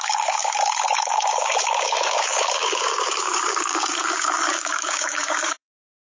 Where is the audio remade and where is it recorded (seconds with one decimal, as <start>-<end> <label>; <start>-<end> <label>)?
0.0-6.1 remade